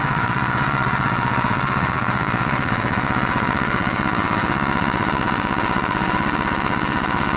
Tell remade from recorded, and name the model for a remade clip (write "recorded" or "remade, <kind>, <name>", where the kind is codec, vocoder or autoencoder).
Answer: remade, vocoder, WaveNeXt